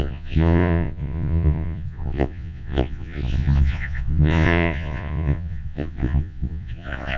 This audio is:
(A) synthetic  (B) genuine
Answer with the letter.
A